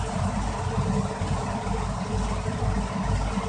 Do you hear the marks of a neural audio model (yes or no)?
no